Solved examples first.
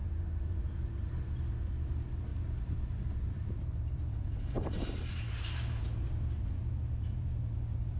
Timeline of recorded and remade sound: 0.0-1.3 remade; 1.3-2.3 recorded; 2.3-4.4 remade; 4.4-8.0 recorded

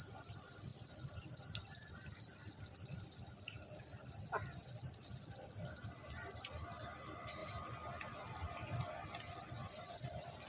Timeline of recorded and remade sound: 0.0-7.4 remade; 7.4-9.7 recorded; 9.7-10.5 remade